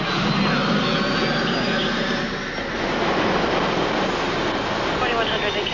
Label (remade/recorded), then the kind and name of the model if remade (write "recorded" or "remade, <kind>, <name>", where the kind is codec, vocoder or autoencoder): recorded